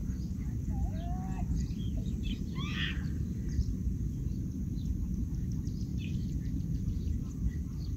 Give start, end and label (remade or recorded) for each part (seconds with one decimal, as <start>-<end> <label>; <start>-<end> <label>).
0.0-0.7 remade; 0.7-1.6 recorded; 1.6-4.2 remade; 4.2-4.9 recorded; 4.9-5.5 remade; 5.5-5.9 recorded; 5.9-6.8 remade; 6.8-8.0 recorded